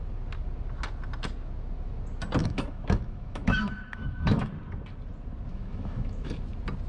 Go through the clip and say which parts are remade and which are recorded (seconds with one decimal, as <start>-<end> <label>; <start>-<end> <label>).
0.0-2.4 recorded; 2.4-4.5 remade; 4.5-5.5 recorded; 5.5-6.3 remade; 6.3-6.9 recorded